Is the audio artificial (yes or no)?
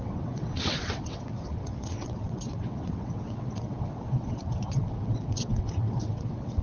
yes